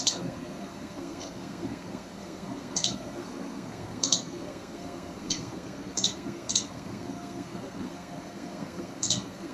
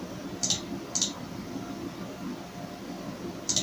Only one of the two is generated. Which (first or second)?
first